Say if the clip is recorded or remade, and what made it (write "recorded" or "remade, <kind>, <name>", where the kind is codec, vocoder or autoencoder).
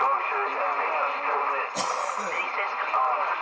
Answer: recorded